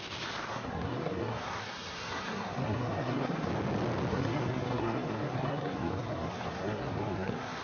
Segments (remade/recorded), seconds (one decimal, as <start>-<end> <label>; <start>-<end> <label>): 0.0-0.5 recorded; 0.5-3.5 remade; 3.5-4.1 recorded; 4.1-7.6 remade